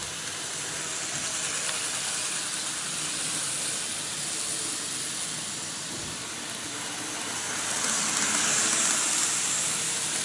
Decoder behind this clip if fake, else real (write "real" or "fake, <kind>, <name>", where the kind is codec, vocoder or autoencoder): real